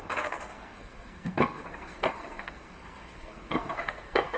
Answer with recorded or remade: remade